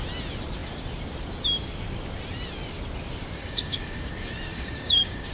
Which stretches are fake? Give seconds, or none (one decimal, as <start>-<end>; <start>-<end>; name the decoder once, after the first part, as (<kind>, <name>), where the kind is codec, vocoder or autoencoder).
3.4-4.1 (codec, DAC); 4.5-5.3